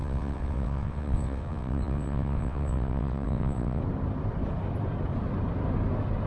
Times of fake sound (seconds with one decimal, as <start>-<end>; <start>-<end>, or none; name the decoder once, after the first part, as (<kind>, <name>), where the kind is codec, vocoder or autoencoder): 0.0-3.8 (vocoder, WaveNeXt)